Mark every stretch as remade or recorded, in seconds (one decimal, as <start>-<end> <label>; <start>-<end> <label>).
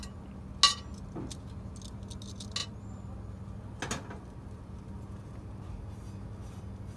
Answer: 0.0-7.0 recorded